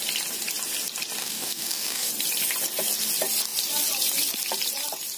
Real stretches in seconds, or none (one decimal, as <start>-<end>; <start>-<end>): 0.0-1.2; 2.1-5.2